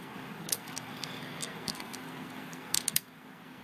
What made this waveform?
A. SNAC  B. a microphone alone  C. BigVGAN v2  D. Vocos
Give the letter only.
A